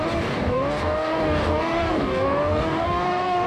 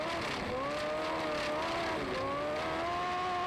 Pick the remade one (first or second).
first